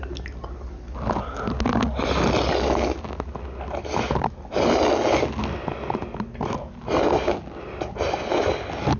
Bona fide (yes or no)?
yes